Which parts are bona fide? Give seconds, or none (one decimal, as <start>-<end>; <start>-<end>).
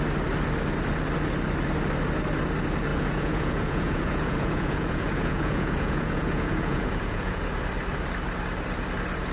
0.0-2.9; 7.4-9.3